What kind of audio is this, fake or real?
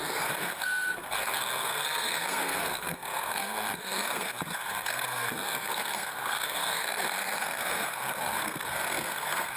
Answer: fake